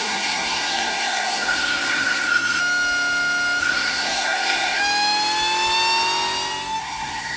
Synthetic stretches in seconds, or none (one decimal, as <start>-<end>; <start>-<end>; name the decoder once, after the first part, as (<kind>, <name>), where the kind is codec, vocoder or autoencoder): 0.0-2.6 (codec, SNAC); 3.6-4.8; 6.8-7.4